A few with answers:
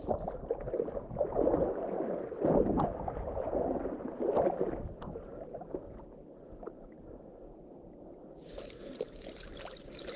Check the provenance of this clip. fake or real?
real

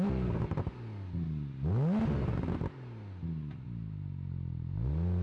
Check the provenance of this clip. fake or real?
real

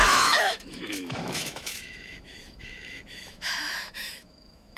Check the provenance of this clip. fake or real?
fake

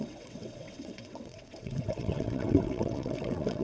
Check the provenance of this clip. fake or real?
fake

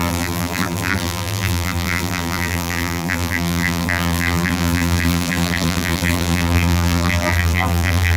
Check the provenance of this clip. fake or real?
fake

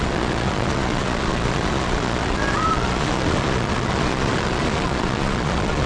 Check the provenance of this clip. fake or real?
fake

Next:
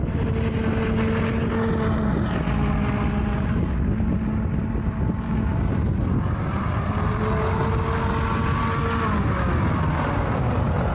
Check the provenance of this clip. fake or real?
real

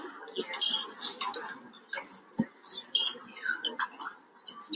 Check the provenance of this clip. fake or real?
real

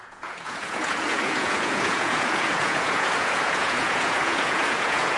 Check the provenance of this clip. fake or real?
fake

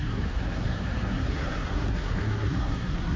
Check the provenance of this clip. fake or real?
fake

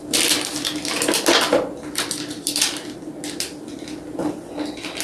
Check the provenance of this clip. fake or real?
real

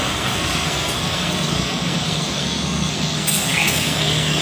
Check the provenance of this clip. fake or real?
fake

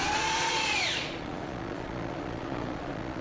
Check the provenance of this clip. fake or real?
fake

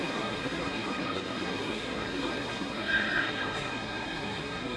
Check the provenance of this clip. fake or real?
fake